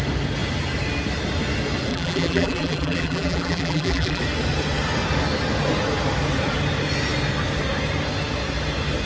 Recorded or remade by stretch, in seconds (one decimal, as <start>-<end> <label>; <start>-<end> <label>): 0.0-1.9 recorded; 1.9-4.2 remade; 4.2-9.1 recorded

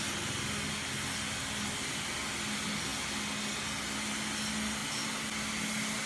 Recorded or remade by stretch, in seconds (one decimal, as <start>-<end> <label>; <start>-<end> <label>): 0.0-6.1 recorded

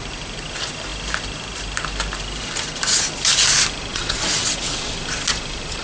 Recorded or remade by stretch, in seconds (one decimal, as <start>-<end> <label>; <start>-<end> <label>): 0.0-3.9 recorded; 3.9-4.9 remade; 4.9-5.8 recorded